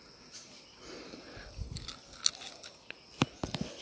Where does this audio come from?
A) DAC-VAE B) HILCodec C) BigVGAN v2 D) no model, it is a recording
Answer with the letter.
D